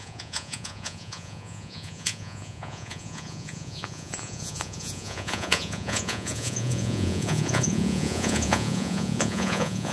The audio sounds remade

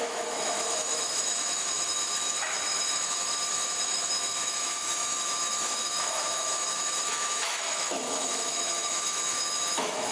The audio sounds remade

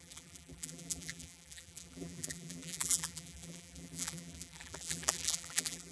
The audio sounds remade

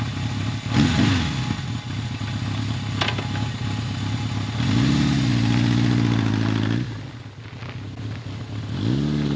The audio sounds recorded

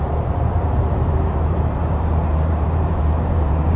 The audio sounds remade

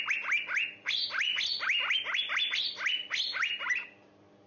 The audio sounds recorded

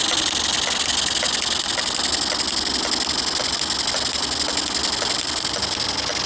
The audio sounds recorded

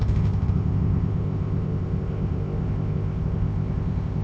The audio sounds remade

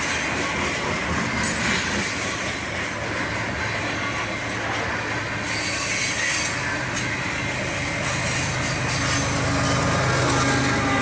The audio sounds recorded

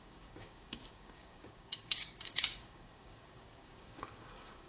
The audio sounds remade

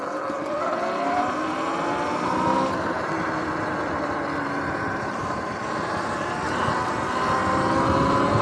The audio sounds recorded